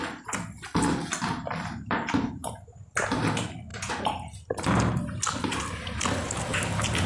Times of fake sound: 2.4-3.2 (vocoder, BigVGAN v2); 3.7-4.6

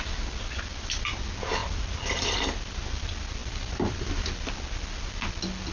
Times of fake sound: 0.7-1.2 (vocoder, BigVGAN v2); 1.6-2.7; 3.4-4.5